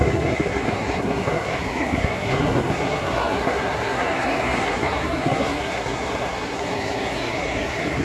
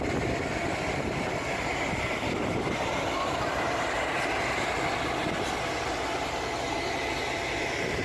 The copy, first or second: first